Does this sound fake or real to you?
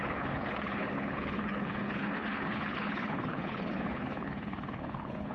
fake